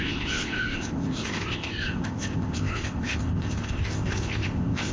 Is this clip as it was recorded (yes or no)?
no